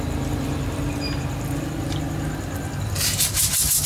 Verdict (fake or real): real